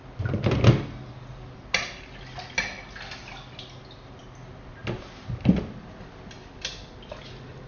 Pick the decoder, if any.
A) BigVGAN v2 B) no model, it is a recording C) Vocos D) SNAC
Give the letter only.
B